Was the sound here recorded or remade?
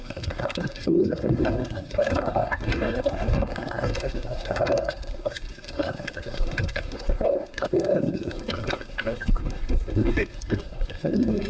remade